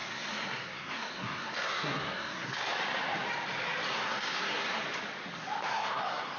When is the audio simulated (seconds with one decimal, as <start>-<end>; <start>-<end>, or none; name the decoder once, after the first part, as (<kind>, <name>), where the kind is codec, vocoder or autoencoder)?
0.0-2.7 (codec, SNAC); 3.9-4.8; 5.7-6.4